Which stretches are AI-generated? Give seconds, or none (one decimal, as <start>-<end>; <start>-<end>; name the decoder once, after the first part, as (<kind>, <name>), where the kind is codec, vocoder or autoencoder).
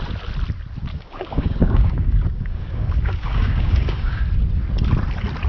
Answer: 0.9-4.2 (codec, DAC)